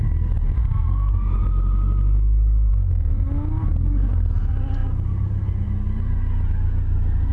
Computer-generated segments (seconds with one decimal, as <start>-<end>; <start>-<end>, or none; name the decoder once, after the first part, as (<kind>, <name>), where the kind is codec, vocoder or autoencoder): 0.6-1.1 (codec, SNAC); 2.7-3.2